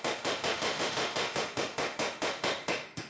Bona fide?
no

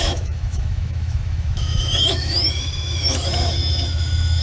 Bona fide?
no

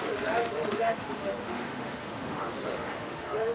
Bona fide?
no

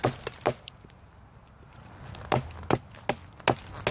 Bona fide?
yes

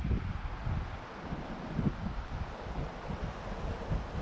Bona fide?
yes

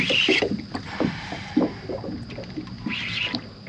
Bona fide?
yes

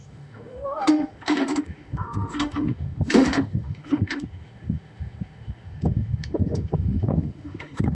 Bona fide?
no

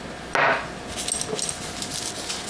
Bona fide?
yes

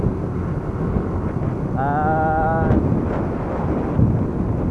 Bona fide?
yes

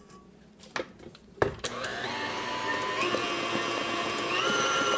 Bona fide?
yes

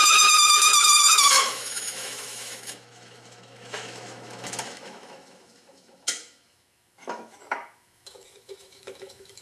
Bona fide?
no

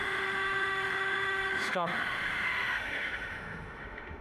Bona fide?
no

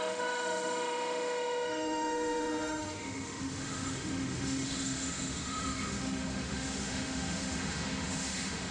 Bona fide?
no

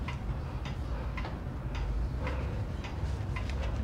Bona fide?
yes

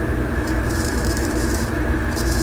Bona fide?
no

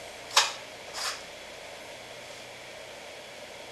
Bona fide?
yes